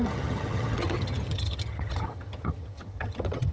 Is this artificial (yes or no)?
yes